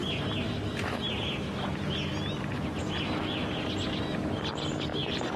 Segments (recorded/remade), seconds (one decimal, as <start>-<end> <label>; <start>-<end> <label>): 0.0-4.9 recorded; 4.9-5.4 remade